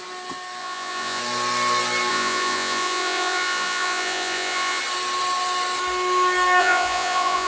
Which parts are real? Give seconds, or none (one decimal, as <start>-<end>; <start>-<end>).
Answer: 0.0-0.6; 1.2-2.1; 4.8-6.6